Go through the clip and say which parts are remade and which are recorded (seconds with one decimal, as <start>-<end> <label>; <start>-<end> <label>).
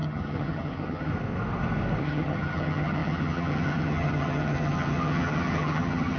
0.0-1.1 remade; 1.1-2.0 recorded; 2.0-6.2 remade